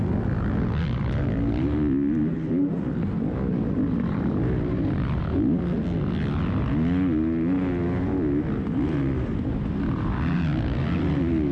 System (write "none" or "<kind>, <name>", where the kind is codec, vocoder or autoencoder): none